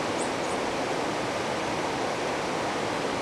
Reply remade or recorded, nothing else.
recorded